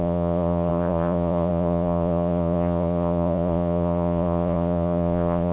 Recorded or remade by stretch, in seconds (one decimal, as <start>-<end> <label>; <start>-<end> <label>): 0.0-5.5 remade